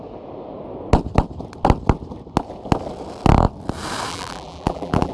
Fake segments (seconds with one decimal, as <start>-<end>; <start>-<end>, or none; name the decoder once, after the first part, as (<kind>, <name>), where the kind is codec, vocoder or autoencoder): 4.1-5.1 (vocoder, BigVGAN v2)